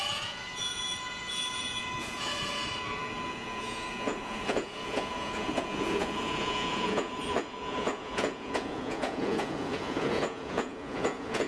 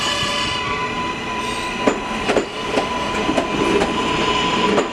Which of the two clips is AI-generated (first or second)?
first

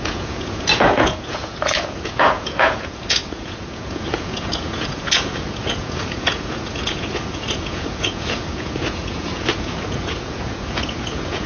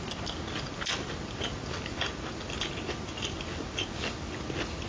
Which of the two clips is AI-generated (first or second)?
first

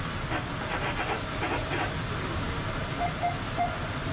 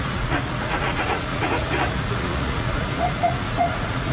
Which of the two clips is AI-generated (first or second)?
second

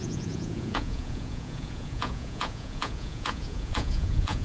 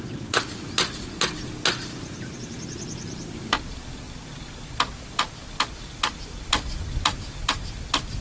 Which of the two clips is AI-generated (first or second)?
first